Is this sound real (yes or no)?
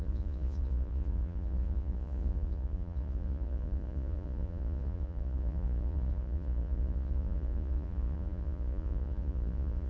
no